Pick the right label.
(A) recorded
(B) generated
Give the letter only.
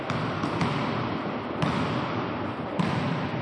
A